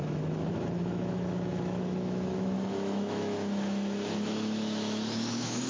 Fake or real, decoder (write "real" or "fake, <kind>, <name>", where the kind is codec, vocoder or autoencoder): fake, autoencoder, DAC-VAE